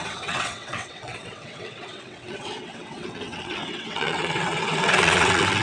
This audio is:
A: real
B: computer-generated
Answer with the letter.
B